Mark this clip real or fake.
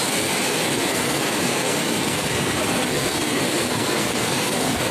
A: fake